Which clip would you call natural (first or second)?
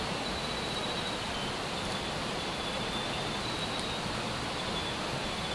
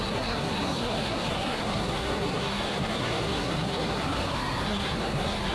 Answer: first